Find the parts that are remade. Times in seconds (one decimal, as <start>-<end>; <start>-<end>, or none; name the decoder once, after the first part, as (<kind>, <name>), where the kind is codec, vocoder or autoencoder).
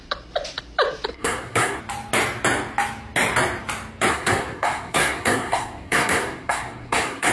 1.1-1.8 (codec, SNAC); 4.1-7.3